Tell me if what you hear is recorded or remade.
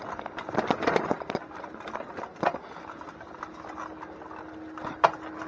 recorded